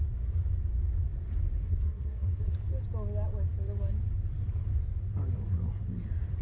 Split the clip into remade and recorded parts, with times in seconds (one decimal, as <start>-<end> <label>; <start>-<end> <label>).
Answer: 0.0-1.6 recorded; 1.6-2.5 remade; 2.5-6.4 recorded